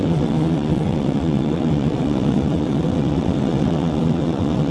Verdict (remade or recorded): remade